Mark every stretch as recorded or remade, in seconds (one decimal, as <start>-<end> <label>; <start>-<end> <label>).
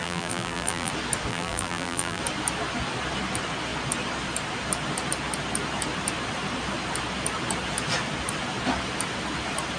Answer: 0.0-0.9 remade; 0.9-1.3 recorded; 1.3-2.2 remade; 2.2-9.8 recorded